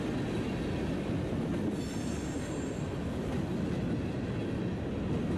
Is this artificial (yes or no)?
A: no